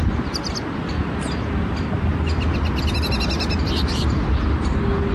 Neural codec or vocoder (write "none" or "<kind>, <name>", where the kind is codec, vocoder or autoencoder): none